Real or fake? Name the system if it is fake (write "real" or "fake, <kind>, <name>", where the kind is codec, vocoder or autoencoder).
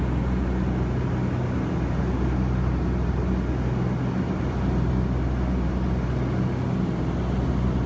real